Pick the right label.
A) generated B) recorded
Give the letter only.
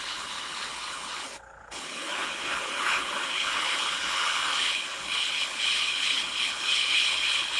A